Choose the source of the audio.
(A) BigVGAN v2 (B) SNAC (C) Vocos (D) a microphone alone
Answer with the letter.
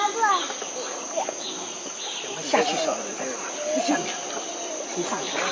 D